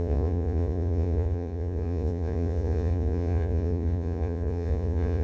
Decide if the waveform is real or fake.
fake